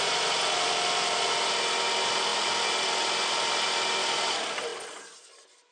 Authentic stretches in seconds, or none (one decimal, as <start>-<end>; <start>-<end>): 0.0-5.7

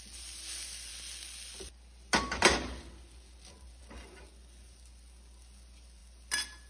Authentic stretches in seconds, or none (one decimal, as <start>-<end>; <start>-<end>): 0.0-6.7

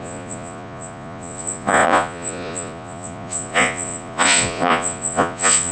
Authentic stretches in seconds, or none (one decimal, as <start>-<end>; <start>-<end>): none

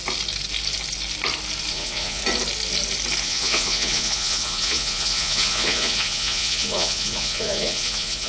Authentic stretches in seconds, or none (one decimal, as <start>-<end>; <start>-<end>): 0.0-1.7; 2.2-3.2